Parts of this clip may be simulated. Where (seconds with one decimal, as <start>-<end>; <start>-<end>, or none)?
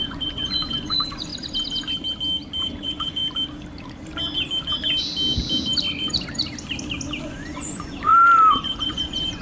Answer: 0.0-1.3; 2.6-3.2; 7.2-8.1; 8.6-9.4